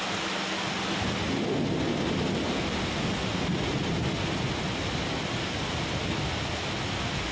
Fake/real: real